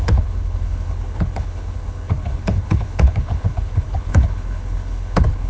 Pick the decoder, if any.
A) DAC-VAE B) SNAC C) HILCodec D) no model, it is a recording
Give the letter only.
C